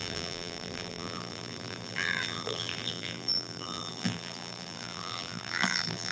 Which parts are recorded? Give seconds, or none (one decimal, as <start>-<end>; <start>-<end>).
none